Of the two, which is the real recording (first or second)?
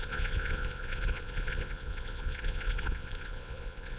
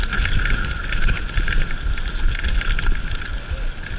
second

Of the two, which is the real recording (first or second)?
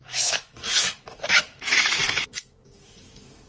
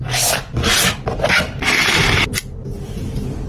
second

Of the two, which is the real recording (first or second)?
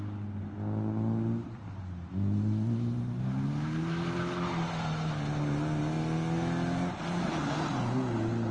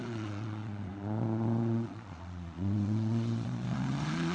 first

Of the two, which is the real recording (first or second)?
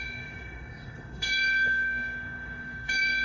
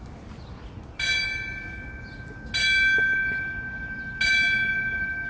second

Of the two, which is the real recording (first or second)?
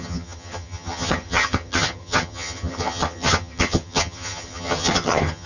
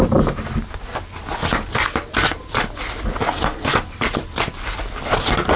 second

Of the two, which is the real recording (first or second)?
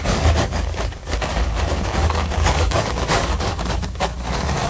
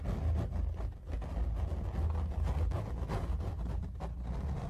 second